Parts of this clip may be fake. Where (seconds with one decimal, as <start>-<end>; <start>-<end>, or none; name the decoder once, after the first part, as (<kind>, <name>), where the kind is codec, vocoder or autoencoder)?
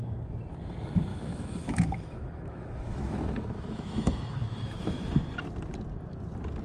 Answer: 1.1-5.1 (autoencoder, DAC-VAE)